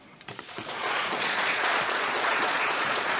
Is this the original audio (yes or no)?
no